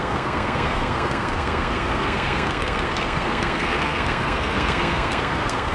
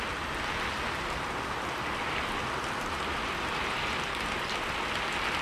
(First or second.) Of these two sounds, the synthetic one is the first